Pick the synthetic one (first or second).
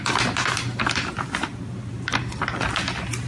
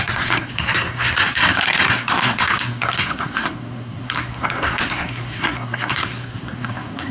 second